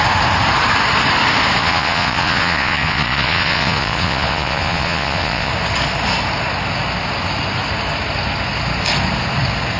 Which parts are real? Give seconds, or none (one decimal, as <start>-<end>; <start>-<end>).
0.0-1.6; 5.5-9.8